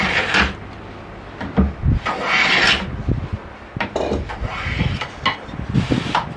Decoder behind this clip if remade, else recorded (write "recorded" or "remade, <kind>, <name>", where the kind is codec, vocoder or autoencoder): recorded